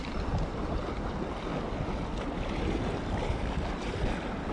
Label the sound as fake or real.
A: real